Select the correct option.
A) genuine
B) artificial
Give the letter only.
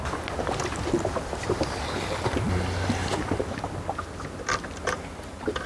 A